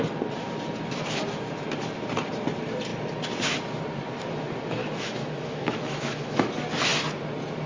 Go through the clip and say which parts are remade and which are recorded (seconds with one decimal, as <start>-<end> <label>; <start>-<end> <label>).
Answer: 0.0-4.8 recorded; 4.8-6.5 remade; 6.5-7.7 recorded